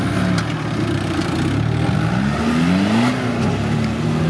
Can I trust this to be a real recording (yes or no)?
yes